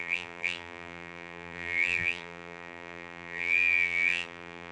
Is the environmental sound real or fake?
fake